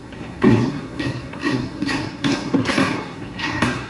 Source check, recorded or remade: remade